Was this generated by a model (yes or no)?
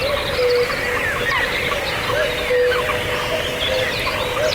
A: no